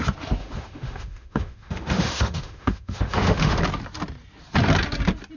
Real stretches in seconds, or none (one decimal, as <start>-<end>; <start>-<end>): 0.0-0.4; 3.6-5.4